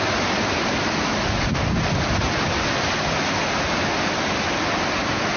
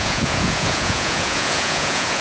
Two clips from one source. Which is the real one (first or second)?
first